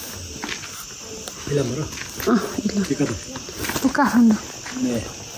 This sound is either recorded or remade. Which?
recorded